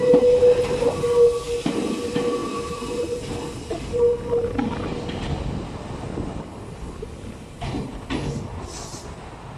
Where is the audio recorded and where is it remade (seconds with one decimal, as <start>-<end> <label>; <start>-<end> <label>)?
0.0-2.4 recorded; 2.4-3.3 remade; 3.3-4.9 recorded; 4.9-5.6 remade; 5.6-9.6 recorded